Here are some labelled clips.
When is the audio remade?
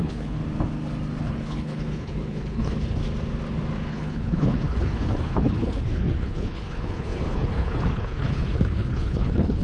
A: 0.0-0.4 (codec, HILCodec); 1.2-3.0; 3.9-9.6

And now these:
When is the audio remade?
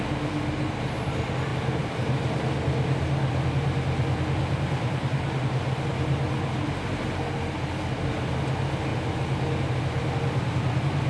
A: none